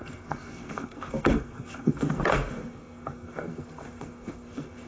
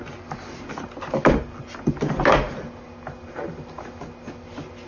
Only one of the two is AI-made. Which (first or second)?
first